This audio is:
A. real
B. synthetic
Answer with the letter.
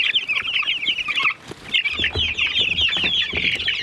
A